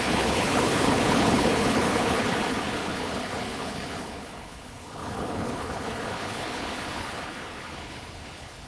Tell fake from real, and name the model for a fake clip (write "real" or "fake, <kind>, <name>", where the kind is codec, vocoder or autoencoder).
fake, codec, HILCodec